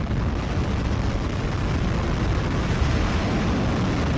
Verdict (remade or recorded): recorded